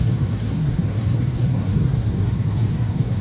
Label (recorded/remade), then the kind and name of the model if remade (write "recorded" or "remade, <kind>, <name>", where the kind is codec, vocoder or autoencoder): remade, codec, SNAC